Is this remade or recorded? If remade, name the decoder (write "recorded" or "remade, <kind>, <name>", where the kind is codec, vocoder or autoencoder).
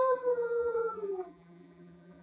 remade, vocoder, BigVGAN v2